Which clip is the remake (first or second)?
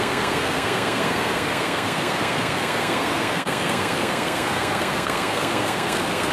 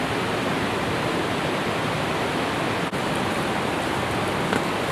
first